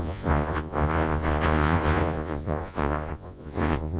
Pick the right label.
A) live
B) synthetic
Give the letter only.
B